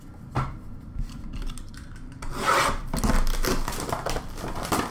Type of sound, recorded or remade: recorded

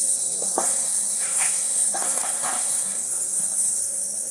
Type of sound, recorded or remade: remade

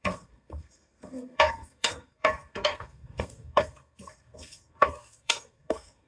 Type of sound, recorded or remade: remade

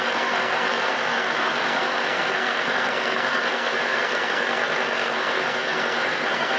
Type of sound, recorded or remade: remade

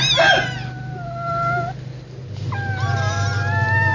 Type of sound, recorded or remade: recorded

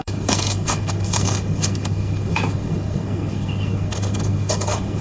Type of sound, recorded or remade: remade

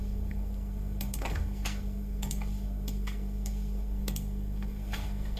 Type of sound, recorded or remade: remade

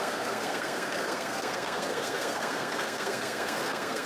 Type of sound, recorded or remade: remade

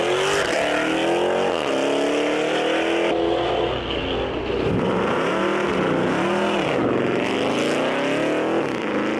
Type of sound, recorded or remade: recorded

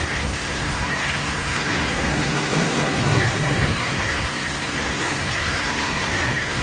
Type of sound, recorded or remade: remade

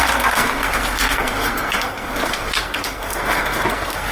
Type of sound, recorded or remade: remade